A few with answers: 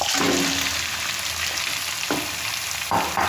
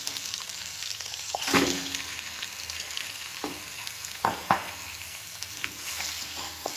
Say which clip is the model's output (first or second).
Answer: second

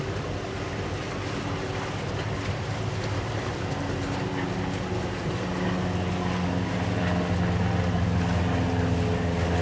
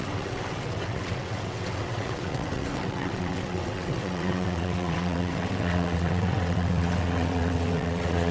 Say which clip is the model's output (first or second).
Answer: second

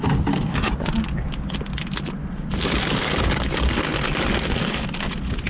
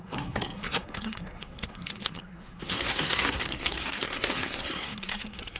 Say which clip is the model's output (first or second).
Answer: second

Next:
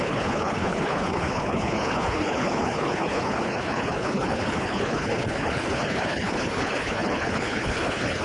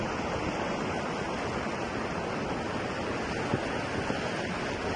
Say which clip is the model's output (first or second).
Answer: first